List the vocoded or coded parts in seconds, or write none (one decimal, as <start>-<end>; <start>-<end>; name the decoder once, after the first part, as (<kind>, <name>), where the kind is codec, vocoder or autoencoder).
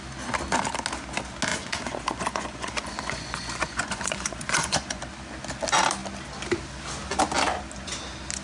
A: 1.5-5.0 (vocoder, Vocos)